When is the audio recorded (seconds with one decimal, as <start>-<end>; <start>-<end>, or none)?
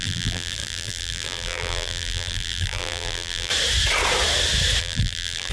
3.5-4.8